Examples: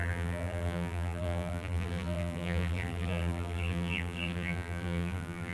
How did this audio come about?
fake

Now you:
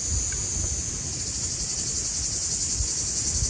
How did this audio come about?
real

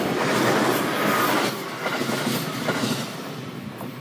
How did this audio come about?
real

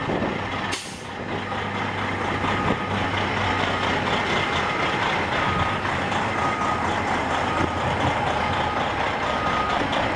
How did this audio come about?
real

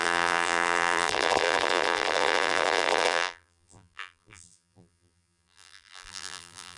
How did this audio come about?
fake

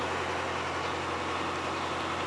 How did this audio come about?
real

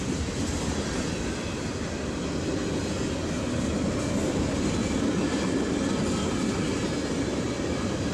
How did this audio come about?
real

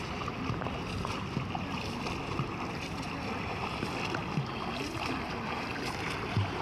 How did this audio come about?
real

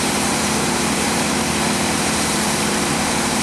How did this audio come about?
fake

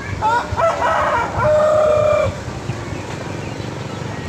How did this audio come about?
real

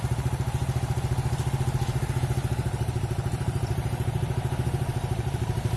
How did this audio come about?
fake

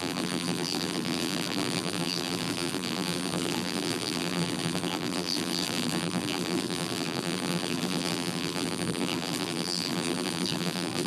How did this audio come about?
fake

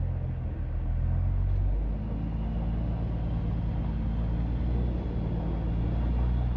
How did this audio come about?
real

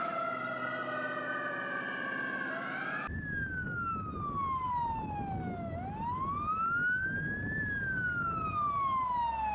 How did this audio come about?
real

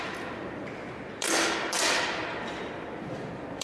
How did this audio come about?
fake